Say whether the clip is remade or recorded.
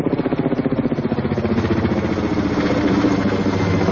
recorded